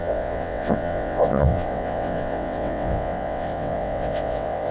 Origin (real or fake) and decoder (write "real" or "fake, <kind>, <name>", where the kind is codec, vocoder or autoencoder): fake, vocoder, WaveNeXt